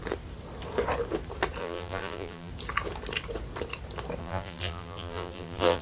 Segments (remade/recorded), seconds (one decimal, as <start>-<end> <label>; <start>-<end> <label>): 0.0-1.6 recorded; 1.6-2.5 remade; 2.5-4.2 recorded; 4.2-5.8 remade